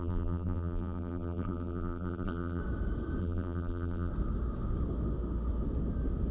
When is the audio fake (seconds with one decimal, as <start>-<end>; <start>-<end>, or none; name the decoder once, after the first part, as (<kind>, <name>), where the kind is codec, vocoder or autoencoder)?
0.0-2.6 (vocoder, BigVGAN v2); 3.2-4.1